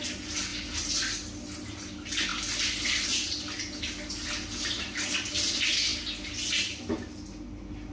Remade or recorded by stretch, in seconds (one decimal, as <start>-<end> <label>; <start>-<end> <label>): 0.0-7.9 recorded